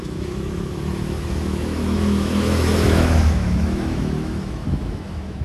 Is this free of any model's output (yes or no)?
no